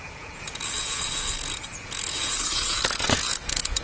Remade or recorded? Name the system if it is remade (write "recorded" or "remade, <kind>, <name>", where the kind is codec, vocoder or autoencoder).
remade, vocoder, Vocos